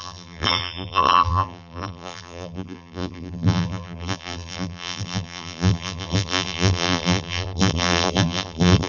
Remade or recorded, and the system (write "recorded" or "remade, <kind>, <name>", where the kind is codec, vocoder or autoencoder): remade, vocoder, BigVGAN v2